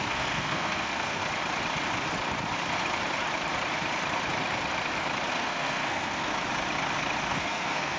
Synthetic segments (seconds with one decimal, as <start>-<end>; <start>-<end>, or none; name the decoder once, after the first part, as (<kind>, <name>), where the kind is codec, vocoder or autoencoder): 0.0-1.2 (codec, SNAC); 5.3-6.3; 7.3-8.0